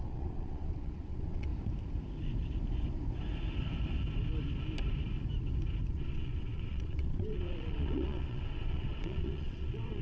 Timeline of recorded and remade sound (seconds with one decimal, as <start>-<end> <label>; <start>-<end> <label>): 0.0-1.5 remade; 1.5-5.9 recorded; 5.9-10.0 remade